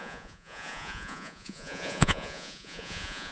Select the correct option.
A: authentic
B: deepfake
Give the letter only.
B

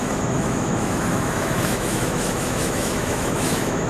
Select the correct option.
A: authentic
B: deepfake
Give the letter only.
B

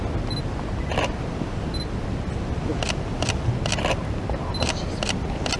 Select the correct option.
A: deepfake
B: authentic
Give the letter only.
B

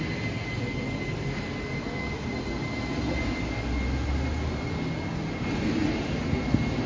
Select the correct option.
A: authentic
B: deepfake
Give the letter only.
A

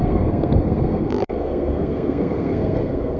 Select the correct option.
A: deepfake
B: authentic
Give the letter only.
A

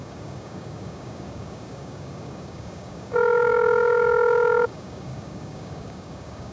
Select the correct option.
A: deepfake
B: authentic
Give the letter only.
A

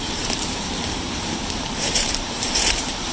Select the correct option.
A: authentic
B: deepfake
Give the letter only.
B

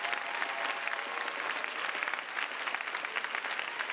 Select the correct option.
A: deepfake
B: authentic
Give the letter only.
B